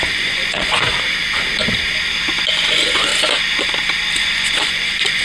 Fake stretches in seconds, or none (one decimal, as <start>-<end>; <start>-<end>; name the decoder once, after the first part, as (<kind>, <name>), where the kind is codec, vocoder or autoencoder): 0.0-0.9 (vocoder, Vocos); 2.5-3.1; 4.2-5.2